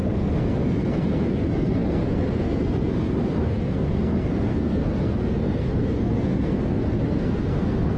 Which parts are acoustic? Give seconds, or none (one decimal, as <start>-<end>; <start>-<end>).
none